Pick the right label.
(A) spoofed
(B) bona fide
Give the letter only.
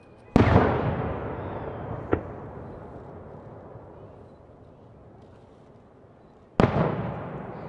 B